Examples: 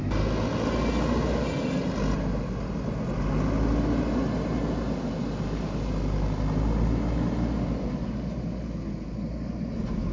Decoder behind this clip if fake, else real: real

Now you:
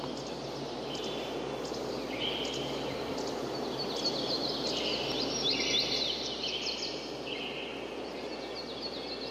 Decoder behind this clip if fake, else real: real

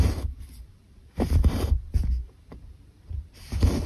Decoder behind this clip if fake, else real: fake, vocoder, BigVGAN v2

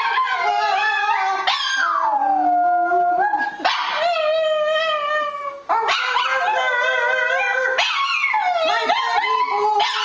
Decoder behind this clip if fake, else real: real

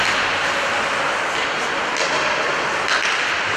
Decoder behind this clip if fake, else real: real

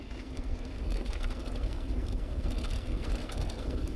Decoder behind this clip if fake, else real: fake, codec, SNAC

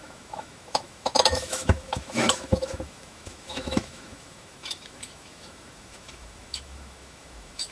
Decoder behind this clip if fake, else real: fake, autoencoder, DAC-VAE